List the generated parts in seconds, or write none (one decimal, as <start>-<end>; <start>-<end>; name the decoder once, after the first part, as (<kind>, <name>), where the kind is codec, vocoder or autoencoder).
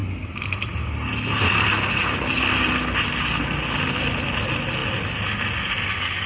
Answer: none